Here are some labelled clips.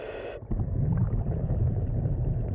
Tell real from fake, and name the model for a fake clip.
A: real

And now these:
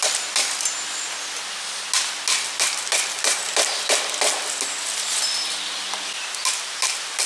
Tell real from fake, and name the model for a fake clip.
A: real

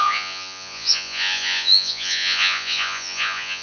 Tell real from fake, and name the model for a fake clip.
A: fake, vocoder, Vocos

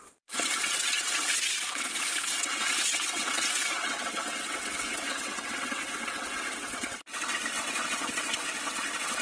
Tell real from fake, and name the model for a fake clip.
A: fake, vocoder, WaveNeXt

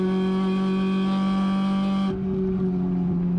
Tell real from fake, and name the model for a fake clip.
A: real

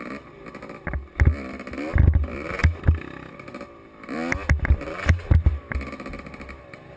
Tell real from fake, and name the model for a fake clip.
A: real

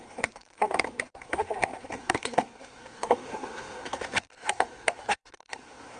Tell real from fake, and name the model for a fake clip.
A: fake, codec, SNAC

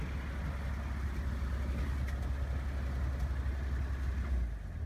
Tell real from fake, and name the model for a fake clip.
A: real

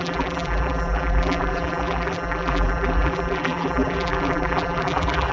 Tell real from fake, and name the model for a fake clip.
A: fake, vocoder, BigVGAN v2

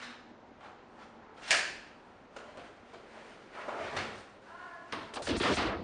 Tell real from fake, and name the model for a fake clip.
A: real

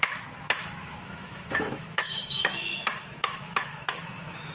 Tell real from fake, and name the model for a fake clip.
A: fake, autoencoder, DAC-VAE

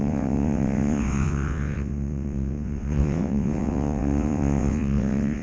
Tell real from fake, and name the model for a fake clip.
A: fake, vocoder, WaveNeXt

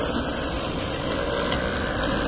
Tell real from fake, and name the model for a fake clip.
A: real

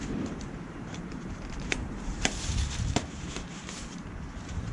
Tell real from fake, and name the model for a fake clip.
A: fake, vocoder, BigVGAN v2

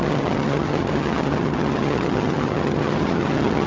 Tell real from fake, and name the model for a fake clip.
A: fake, vocoder, HiFi-GAN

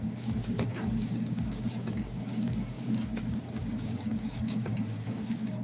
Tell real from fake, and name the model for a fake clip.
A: fake, codec, DAC